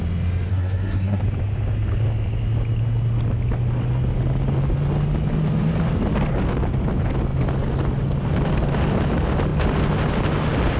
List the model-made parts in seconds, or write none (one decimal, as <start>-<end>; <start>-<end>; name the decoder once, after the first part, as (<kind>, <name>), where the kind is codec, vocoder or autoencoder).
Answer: 0.5-1.2 (codec, SNAC)